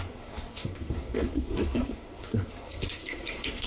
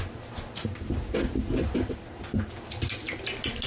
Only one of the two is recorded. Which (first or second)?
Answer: second